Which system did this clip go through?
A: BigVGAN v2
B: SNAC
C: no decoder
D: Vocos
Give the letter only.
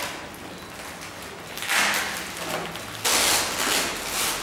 C